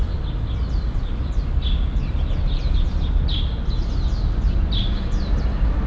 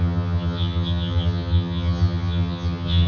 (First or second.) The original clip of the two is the first